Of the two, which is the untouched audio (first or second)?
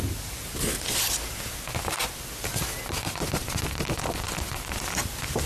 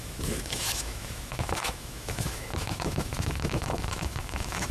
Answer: first